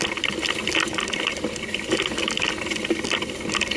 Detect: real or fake real